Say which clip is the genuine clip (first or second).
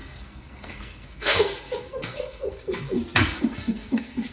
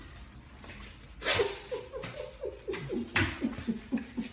second